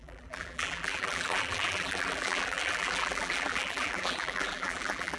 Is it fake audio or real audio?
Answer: fake